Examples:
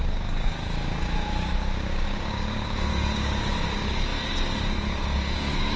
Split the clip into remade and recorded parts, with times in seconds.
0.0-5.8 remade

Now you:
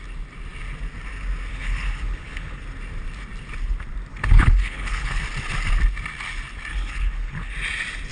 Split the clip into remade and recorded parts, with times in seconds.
0.0-1.5 recorded; 1.5-2.6 remade; 2.6-4.1 recorded; 4.1-5.2 remade; 5.2-6.7 recorded; 6.7-7.5 remade; 7.5-8.1 recorded

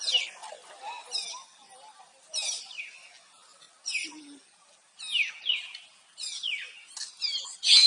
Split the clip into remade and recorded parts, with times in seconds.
0.0-7.9 recorded